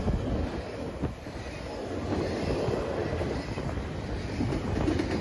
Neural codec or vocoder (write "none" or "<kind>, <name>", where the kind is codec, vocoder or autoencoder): none